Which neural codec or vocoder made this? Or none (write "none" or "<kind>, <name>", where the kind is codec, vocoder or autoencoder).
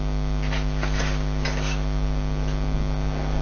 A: none